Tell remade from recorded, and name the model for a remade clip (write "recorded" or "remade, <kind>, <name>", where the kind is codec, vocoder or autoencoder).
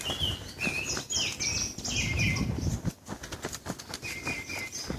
recorded